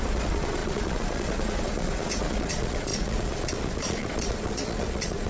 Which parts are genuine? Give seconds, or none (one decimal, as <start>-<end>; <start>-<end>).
none